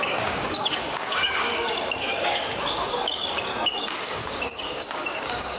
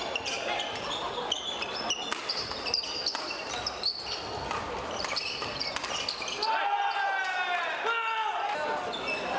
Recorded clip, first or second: second